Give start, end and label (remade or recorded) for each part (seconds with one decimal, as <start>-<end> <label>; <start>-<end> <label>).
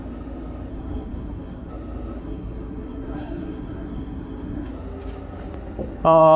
0.0-0.7 recorded; 0.7-1.7 remade; 1.7-2.2 recorded; 2.2-4.7 remade; 4.7-6.4 recorded